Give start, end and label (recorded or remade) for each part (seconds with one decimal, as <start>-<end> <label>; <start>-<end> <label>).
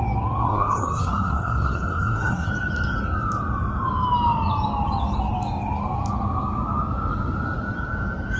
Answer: 0.0-0.4 recorded; 0.4-2.5 remade; 2.5-8.4 recorded